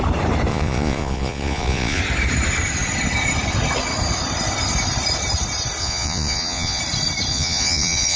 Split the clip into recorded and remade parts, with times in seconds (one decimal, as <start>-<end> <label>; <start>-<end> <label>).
0.0-0.5 recorded; 0.5-2.0 remade; 2.0-5.8 recorded; 5.8-6.8 remade; 6.8-7.3 recorded; 7.3-8.2 remade